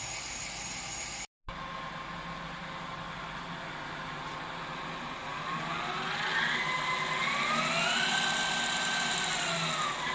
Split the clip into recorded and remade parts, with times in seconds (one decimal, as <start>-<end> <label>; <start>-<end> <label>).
0.0-10.1 recorded